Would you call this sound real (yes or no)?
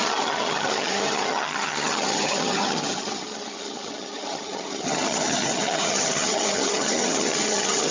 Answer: no